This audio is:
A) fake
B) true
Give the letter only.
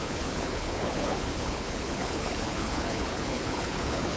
A